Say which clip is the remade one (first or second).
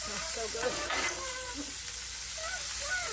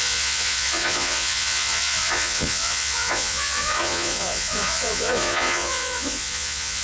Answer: second